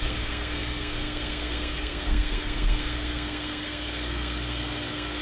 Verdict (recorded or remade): remade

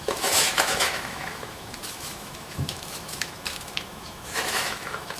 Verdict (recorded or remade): remade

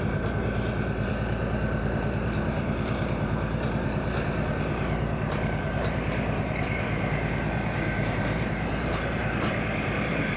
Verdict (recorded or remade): remade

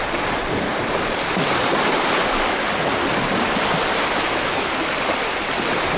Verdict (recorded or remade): remade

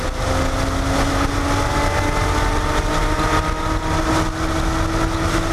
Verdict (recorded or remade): recorded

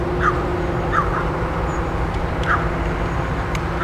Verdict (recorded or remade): recorded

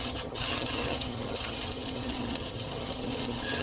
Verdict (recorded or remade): remade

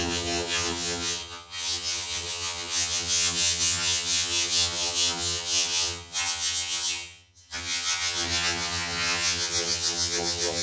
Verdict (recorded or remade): remade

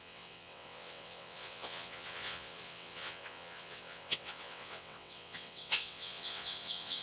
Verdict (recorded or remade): remade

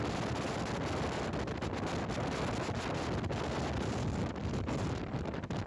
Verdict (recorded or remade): recorded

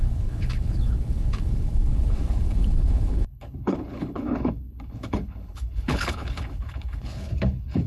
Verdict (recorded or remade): remade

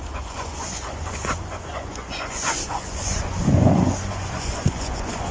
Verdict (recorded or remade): remade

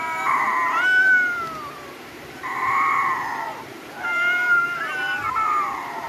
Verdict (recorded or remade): remade